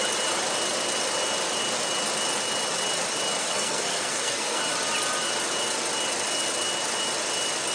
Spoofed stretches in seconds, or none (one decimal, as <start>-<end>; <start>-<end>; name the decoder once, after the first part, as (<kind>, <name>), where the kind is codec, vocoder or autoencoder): 3.4-4.6 (codec, SNAC)